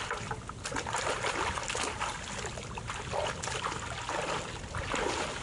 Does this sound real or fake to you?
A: real